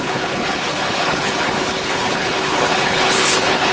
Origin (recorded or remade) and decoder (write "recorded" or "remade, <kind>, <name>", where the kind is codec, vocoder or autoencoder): remade, codec, HILCodec